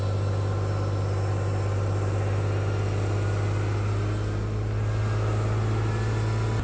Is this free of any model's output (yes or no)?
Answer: yes